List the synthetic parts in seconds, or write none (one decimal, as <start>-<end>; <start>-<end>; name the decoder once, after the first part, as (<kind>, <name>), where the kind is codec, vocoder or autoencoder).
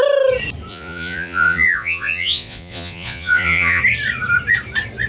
0.7-3.8 (vocoder, Vocos)